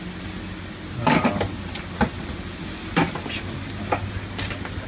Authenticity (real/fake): real